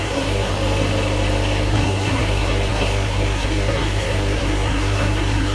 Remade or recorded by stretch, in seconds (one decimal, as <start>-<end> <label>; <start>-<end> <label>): 0.0-0.5 remade; 0.5-1.7 recorded; 1.7-5.5 remade